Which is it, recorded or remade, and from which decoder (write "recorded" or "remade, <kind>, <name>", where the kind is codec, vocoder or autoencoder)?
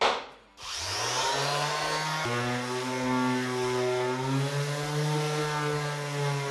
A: recorded